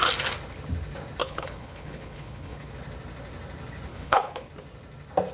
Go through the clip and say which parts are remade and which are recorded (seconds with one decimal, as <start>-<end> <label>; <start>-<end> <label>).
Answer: 0.0-1.2 recorded; 1.2-2.7 remade; 2.7-3.9 recorded; 3.9-4.5 remade; 4.5-5.3 recorded